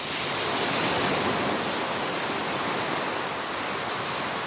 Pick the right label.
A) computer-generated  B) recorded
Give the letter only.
B